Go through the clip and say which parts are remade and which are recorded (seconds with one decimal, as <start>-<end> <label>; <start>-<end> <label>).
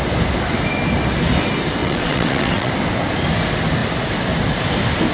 0.0-1.8 recorded; 1.8-2.7 remade; 2.7-5.1 recorded